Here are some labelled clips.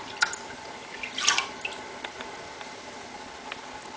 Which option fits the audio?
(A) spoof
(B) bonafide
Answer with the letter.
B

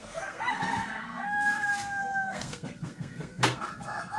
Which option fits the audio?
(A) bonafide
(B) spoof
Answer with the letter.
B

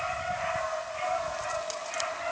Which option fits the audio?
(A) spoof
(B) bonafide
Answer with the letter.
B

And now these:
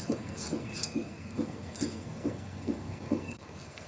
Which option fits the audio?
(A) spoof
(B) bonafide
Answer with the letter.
A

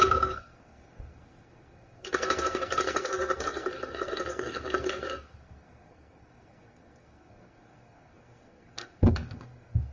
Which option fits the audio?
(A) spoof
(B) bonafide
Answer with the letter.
A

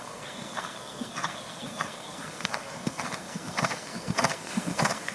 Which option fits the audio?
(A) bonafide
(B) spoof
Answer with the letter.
B